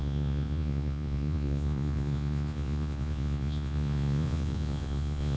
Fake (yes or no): yes